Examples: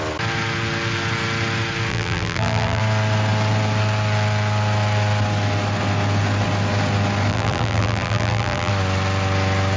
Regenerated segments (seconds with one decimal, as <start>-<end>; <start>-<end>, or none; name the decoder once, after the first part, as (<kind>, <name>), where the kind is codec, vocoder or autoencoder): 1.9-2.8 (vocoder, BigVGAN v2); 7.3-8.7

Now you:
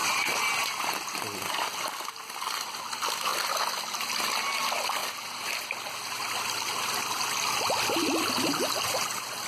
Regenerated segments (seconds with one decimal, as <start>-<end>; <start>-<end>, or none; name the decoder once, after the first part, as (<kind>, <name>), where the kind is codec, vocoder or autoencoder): 0.0-0.5 (vocoder, BigVGAN v2)

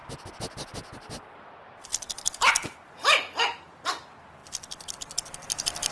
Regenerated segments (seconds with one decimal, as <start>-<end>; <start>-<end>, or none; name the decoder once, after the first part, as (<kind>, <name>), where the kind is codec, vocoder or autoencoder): 1.5-1.9 (vocoder, BigVGAN v2); 2.5-5.9